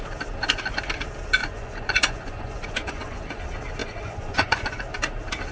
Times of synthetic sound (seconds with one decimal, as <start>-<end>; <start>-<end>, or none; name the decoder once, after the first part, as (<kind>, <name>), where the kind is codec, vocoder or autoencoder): 1.4-3.4 (vocoder, Vocos); 3.8-4.8